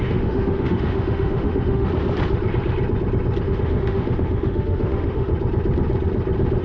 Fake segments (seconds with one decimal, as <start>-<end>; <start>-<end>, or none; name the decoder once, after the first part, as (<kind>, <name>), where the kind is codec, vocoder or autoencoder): 0.0-1.9 (autoencoder, DAC-VAE); 3.4-5.3